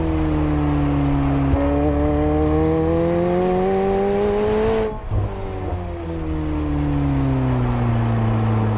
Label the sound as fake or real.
real